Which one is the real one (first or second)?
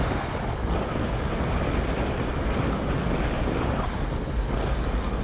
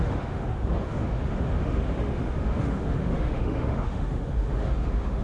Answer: first